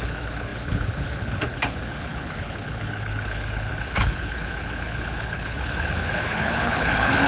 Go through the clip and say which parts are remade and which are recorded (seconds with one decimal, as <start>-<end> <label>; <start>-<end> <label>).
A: 0.0-7.3 remade